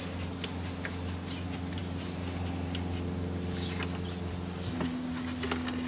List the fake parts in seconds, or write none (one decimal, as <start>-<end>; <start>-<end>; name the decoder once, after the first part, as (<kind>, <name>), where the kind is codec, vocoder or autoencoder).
none